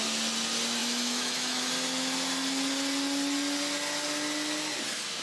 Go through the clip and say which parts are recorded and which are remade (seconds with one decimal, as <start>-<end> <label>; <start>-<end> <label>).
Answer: 0.0-0.8 recorded; 0.8-1.7 remade; 1.7-5.2 recorded